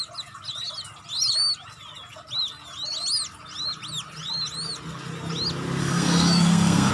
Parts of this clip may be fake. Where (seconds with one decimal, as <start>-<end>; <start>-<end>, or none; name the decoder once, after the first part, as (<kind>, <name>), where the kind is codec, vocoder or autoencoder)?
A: 5.8-6.9 (codec, SNAC)